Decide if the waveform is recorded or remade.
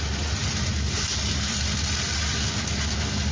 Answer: recorded